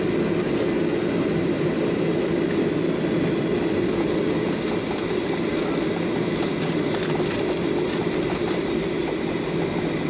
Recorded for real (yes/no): yes